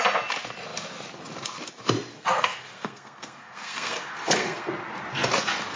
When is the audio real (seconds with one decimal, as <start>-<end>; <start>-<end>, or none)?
0.0-2.1; 4.7-5.8